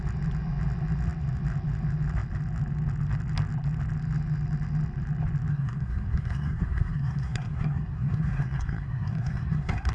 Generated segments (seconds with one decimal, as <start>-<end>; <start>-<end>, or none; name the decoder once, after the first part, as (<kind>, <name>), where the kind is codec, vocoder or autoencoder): 5.5-9.9 (codec, SNAC)